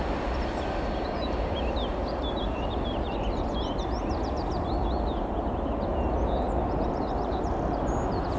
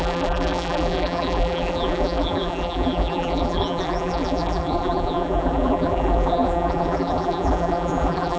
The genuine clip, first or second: first